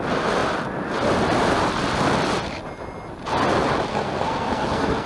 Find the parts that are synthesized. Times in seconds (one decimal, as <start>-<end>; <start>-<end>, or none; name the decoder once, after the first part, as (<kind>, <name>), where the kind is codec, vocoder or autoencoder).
3.9-5.1 (codec, SNAC)